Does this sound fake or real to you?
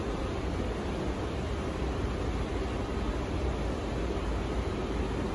real